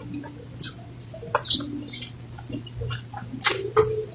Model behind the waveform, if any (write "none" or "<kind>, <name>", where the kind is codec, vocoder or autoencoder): none